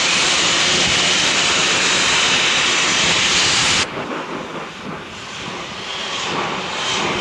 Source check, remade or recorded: recorded